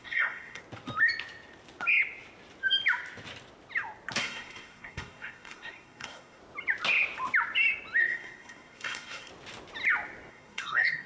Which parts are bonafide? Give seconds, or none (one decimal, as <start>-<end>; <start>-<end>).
0.6-4.2; 6.4-8.0; 9.3-10.3